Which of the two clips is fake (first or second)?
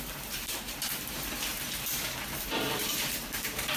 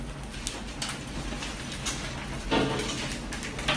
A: first